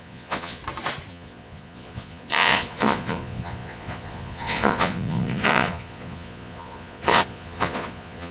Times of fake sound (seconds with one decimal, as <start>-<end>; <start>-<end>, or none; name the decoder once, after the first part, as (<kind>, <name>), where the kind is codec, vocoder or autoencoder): 0.0-0.6 (vocoder, Vocos); 1.1-8.3